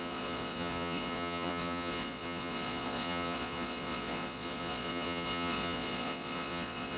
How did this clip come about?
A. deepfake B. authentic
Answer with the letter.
A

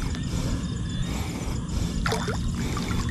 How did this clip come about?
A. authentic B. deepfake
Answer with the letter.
A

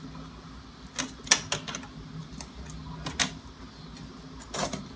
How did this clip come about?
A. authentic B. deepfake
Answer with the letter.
A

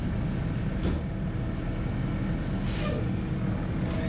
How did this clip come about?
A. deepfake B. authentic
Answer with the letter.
B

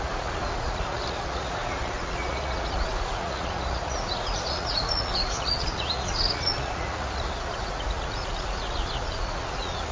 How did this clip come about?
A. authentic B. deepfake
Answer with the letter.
B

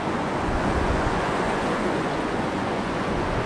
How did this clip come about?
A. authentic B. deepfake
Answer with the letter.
B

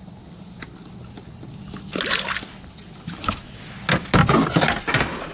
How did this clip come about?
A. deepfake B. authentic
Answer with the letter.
B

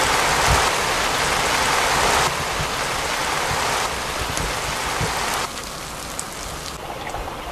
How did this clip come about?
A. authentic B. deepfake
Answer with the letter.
A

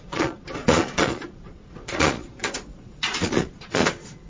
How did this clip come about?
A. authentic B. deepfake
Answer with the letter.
B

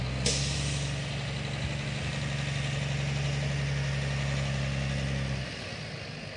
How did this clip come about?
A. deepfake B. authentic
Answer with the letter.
B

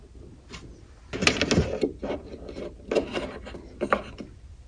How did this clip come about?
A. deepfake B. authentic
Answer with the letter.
B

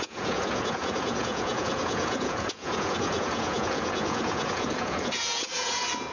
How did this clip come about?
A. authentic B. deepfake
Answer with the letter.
B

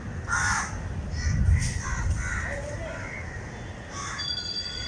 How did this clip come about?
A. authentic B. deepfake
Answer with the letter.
A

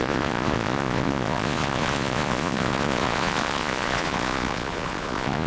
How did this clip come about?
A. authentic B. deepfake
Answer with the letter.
B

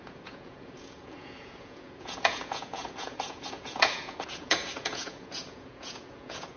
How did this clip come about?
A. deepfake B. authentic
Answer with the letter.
A